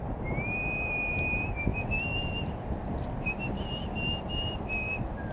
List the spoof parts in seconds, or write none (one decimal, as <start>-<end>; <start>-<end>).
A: none